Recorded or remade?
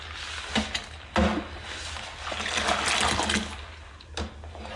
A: recorded